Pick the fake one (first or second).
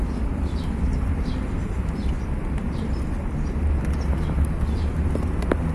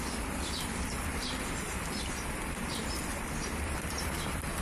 second